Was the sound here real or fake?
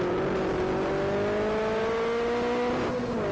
real